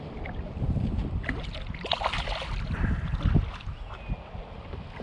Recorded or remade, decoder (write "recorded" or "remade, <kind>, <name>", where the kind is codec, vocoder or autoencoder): recorded